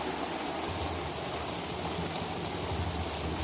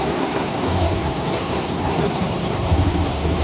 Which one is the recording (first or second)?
first